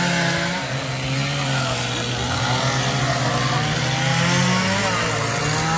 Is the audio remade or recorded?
recorded